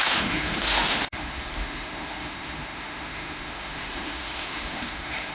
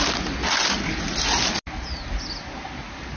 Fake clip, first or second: first